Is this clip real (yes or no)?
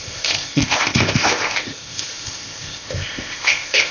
no